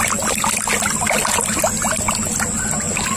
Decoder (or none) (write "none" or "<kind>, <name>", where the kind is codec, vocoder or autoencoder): none